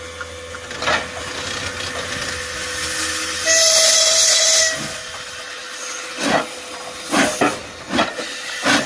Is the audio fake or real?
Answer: real